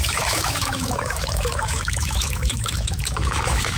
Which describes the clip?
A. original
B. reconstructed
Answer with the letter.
B